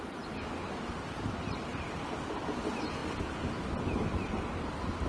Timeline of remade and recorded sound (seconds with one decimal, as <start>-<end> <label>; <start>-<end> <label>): 0.0-1.7 recorded; 1.7-2.6 remade; 2.6-5.1 recorded